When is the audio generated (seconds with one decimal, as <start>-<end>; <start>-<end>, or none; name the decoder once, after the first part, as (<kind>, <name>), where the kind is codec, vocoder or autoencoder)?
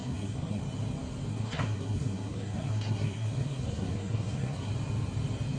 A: 0.0-0.6 (codec, SNAC); 1.3-4.7